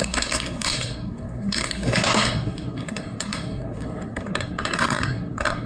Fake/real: fake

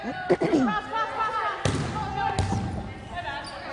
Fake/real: real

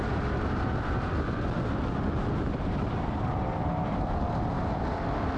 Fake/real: real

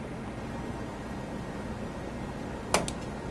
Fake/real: real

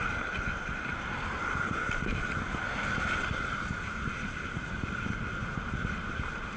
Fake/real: real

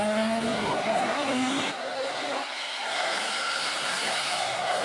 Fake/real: fake